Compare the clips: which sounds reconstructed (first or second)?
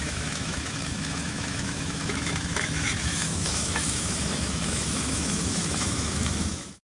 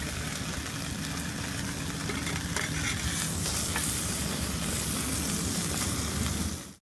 first